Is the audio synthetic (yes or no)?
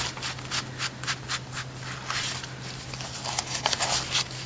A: no